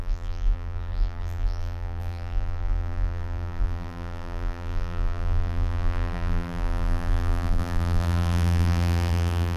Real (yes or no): no